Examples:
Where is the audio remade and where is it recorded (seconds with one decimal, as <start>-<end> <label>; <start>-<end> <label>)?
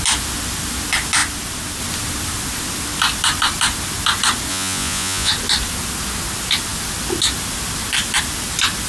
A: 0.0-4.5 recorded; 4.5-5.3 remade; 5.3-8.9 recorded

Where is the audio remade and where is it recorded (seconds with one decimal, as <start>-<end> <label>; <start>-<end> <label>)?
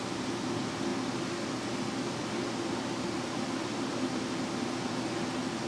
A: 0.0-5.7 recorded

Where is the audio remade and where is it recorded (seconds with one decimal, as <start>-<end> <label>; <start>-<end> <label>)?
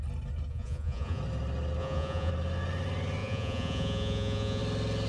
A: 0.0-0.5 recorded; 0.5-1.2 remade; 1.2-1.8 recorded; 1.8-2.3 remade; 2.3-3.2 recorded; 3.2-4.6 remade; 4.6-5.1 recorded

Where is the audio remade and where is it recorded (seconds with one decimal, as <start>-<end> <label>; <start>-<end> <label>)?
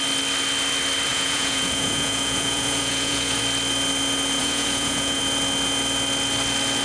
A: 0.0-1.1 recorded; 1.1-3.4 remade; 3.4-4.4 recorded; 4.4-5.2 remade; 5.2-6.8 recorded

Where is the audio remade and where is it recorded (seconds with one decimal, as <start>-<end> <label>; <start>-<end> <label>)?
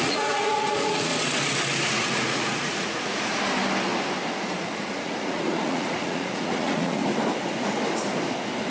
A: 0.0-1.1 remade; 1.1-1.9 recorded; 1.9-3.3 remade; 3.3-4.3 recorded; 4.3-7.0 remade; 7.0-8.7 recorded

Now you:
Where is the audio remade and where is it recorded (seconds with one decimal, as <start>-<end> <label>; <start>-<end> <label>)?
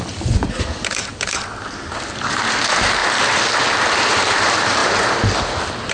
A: 0.0-5.9 recorded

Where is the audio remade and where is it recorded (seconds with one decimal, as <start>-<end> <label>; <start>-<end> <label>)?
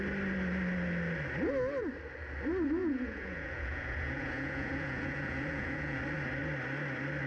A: 0.0-2.8 recorded; 2.8-6.0 remade; 6.0-7.3 recorded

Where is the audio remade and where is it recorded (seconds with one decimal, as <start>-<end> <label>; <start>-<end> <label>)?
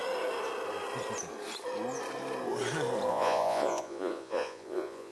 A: 0.0-3.1 recorded; 3.1-5.1 remade